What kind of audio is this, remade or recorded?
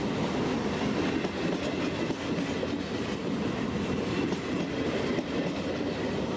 recorded